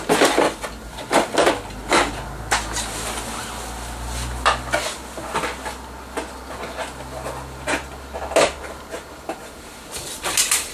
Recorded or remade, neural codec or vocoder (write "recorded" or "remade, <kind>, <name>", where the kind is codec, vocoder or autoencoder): recorded